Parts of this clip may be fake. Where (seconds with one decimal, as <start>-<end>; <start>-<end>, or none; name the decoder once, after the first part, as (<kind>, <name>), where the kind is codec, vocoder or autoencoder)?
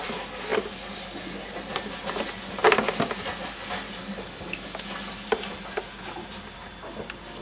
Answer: none